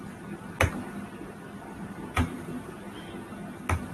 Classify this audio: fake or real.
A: real